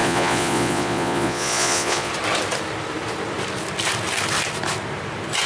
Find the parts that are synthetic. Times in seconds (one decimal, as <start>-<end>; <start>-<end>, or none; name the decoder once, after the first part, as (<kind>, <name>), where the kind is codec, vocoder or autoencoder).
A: 0.0-2.1 (vocoder, Vocos)